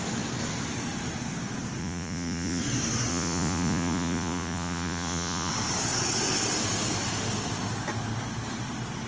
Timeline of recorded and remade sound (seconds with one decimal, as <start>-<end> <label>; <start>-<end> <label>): 0.0-1.8 recorded; 1.8-2.6 remade; 2.6-3.1 recorded; 3.1-5.5 remade; 5.5-9.1 recorded